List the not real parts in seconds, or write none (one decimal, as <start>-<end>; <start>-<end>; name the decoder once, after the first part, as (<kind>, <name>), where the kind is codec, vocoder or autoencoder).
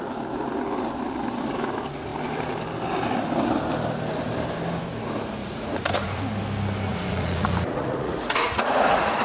5.4-6.2 (vocoder, Vocos); 6.9-9.2